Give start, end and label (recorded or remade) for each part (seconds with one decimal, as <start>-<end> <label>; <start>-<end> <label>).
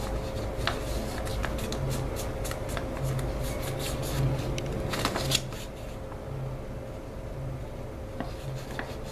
0.0-9.1 recorded